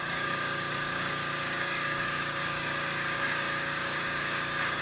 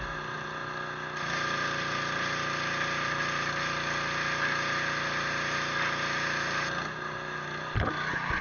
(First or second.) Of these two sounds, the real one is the second